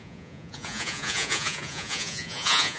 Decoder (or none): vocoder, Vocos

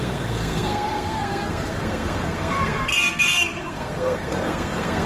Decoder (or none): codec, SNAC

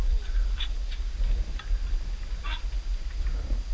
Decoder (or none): none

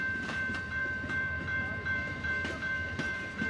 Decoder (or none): vocoder, BigVGAN v2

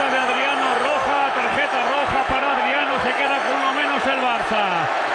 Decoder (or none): autoencoder, DAC-VAE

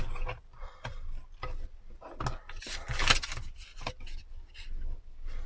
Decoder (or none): none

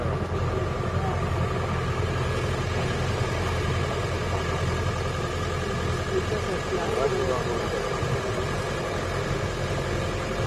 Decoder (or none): none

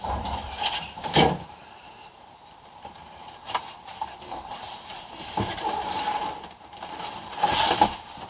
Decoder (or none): vocoder, BigVGAN v2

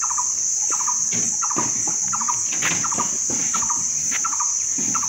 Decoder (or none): none